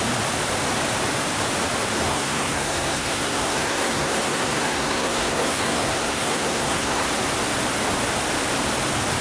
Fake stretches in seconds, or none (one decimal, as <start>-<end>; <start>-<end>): 2.0-7.1